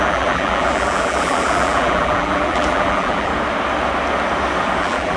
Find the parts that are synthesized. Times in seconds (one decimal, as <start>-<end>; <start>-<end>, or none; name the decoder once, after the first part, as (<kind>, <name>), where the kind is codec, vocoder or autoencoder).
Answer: 0.0-3.3 (vocoder, BigVGAN v2); 4.8-5.2